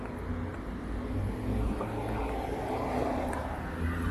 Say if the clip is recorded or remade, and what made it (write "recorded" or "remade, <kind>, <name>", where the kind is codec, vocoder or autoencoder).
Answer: recorded